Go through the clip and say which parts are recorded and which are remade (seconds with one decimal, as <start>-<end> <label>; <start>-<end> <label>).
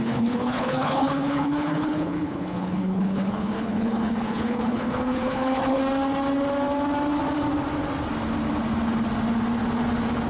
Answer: 0.0-5.8 remade; 5.8-10.3 recorded